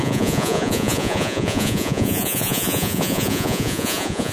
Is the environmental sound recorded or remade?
remade